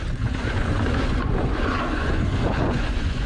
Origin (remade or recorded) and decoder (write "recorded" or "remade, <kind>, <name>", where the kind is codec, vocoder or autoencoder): remade, vocoder, Vocos